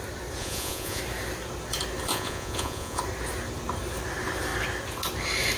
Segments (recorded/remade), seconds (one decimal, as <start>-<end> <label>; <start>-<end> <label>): 0.0-0.4 recorded; 0.4-1.0 remade; 1.0-2.1 recorded; 2.1-3.0 remade; 3.0-5.6 recorded